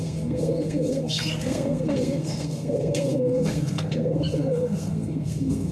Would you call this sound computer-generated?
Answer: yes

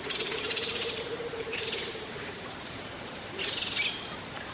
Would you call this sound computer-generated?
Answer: yes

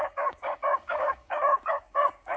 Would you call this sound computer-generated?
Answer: yes